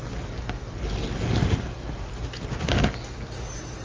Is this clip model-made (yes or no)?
no